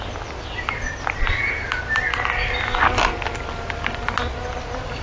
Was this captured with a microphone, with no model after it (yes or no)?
yes